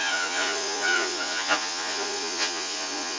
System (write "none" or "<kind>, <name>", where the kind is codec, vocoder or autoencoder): vocoder, Vocos